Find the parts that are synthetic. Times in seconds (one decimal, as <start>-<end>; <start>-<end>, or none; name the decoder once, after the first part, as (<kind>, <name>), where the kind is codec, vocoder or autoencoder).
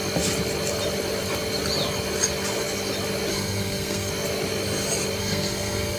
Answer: 3.3-4.1 (codec, SNAC); 5.2-6.0